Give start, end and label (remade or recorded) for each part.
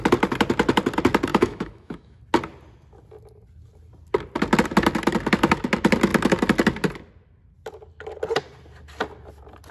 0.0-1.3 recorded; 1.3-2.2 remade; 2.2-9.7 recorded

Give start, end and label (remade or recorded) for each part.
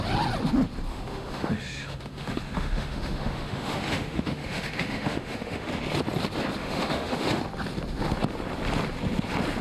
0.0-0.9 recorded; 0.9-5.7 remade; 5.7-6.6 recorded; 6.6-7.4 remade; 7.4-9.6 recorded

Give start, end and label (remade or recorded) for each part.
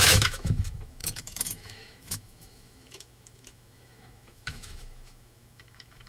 0.0-6.1 remade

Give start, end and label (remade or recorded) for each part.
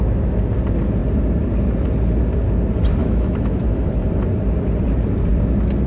0.0-3.0 recorded; 3.0-3.9 remade; 3.9-5.9 recorded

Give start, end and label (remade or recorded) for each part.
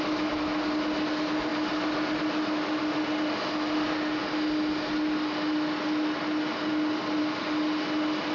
0.0-8.3 recorded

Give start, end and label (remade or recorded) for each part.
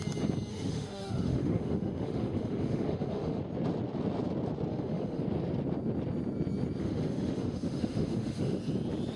0.0-0.5 recorded; 0.5-3.4 remade; 3.4-4.7 recorded; 4.7-5.2 remade; 5.2-6.8 recorded; 6.8-8.6 remade; 8.6-9.2 recorded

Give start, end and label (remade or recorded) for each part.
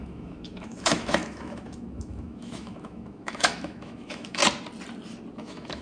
0.0-4.4 remade; 4.4-5.3 recorded; 5.3-5.8 remade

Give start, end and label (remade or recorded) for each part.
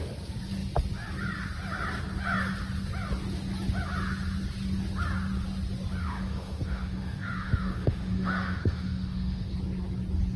0.0-6.0 recorded; 6.0-9.5 remade; 9.5-10.4 recorded